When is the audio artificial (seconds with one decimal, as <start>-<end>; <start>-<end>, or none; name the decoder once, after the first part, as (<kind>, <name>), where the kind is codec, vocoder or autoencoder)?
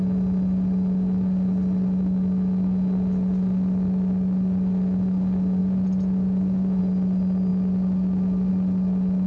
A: 5.6-6.8 (vocoder, Vocos)